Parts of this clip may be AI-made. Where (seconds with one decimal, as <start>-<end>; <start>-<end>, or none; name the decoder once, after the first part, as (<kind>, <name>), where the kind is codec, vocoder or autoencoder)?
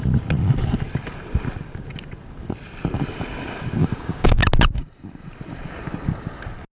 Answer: 3.8-4.4 (codec, DAC)